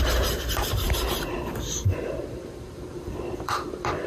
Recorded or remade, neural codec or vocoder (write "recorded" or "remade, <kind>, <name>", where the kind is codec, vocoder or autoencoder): remade, vocoder, BigVGAN v2